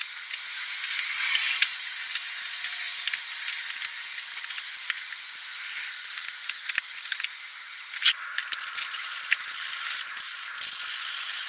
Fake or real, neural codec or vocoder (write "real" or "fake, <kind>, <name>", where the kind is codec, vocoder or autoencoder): real